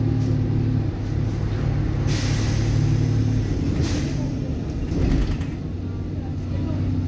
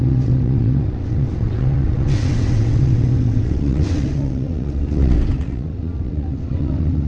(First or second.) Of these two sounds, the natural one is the first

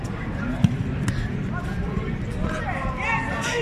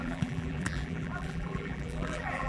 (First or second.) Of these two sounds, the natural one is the first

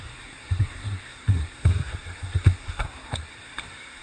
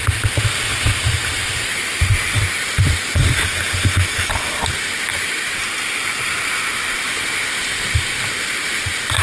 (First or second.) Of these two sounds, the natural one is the second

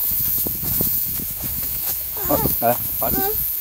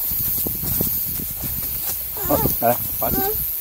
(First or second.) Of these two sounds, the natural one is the second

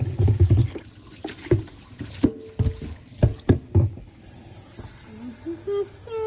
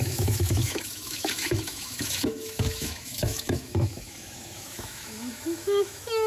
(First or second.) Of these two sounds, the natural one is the first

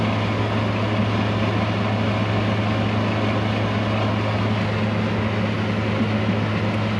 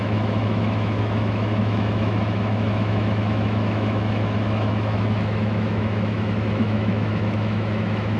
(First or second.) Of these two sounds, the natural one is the first